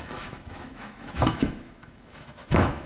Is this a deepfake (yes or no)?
yes